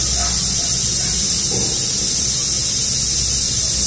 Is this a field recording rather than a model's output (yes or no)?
yes